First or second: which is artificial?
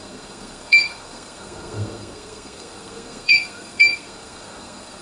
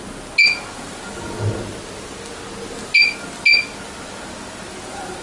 first